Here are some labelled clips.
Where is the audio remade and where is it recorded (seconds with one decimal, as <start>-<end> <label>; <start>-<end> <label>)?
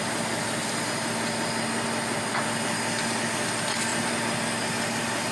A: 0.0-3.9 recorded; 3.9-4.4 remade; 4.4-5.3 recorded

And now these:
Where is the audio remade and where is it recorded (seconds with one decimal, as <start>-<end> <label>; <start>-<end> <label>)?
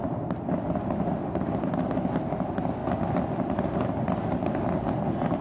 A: 0.0-0.6 remade; 0.6-5.4 recorded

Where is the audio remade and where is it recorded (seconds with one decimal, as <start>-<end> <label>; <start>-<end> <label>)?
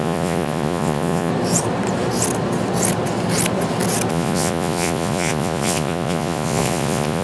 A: 0.0-1.3 remade; 1.3-4.1 recorded; 4.1-7.2 remade